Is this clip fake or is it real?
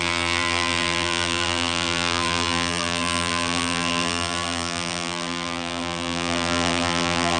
fake